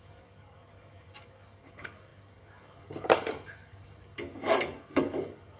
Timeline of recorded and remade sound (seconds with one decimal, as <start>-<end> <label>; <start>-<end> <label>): 0.0-5.6 remade